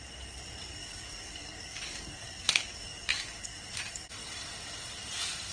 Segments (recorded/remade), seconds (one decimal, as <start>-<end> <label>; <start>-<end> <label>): 0.0-0.8 recorded; 0.8-3.8 remade; 3.8-5.5 recorded